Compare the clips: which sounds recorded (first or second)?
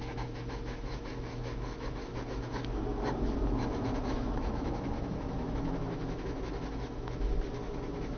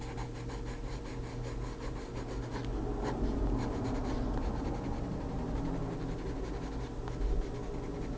second